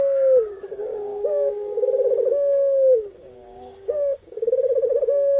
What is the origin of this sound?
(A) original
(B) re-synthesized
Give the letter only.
B